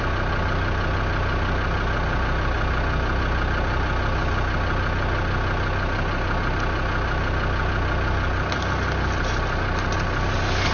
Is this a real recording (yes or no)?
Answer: yes